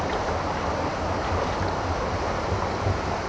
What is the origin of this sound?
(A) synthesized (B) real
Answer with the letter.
B